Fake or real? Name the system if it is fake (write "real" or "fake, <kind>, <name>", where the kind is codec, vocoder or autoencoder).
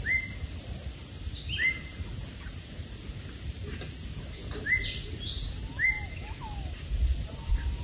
real